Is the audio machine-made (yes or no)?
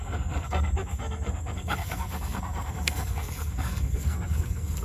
yes